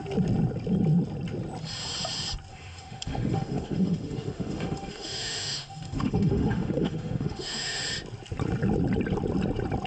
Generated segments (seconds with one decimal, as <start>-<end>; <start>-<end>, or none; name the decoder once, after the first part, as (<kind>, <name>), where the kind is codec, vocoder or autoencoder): 2.5-7.8 (autoencoder, DAC-VAE)